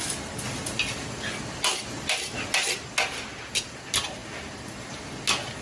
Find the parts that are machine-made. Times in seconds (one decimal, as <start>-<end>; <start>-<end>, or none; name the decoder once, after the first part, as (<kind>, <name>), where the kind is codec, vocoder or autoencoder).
none